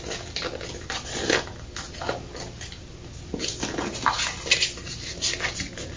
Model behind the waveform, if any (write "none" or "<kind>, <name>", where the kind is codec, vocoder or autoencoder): none